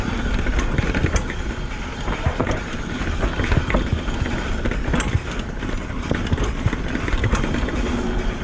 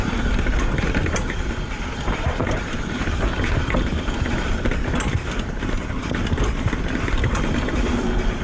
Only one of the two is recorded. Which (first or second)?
first